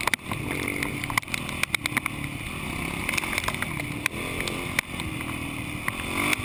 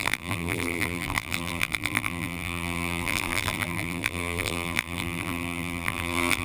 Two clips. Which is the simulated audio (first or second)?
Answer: second